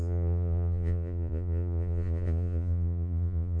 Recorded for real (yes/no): no